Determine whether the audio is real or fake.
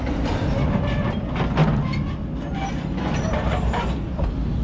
real